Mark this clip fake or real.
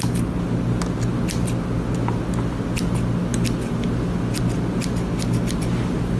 real